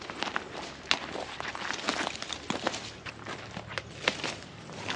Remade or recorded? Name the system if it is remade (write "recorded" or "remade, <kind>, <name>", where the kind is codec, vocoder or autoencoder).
recorded